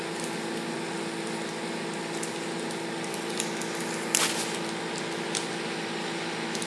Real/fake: real